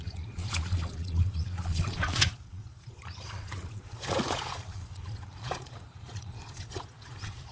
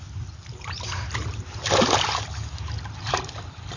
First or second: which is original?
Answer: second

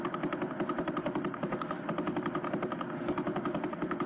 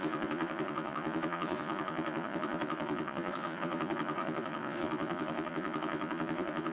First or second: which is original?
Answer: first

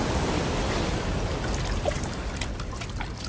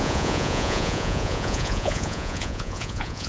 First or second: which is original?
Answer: first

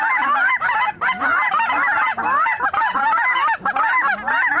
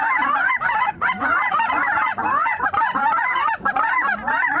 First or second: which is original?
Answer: first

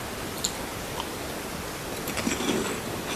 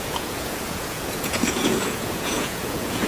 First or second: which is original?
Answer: first